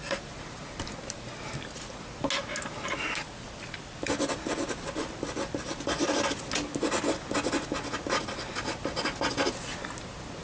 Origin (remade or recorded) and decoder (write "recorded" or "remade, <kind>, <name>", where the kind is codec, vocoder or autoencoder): recorded